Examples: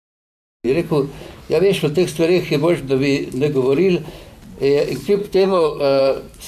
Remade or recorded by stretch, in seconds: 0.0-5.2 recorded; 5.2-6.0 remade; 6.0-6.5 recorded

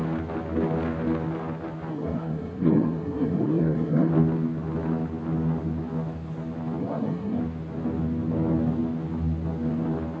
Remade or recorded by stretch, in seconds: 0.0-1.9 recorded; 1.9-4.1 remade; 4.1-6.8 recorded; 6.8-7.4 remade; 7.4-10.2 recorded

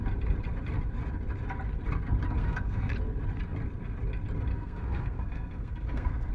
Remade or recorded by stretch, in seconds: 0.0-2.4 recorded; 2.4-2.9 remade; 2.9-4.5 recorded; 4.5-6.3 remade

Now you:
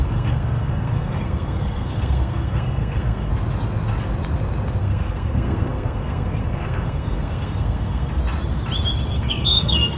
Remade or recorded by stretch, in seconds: 0.0-3.3 remade; 3.3-4.8 recorded; 4.8-8.2 remade; 8.2-9.1 recorded; 9.1-10.0 remade